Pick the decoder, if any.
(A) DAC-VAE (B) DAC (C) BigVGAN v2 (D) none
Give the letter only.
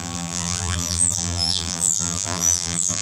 C